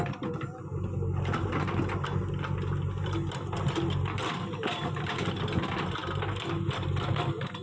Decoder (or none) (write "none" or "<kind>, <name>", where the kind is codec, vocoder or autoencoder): none